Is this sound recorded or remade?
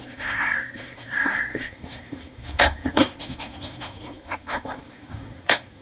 remade